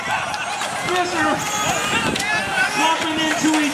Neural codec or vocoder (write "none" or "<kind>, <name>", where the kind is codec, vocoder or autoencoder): none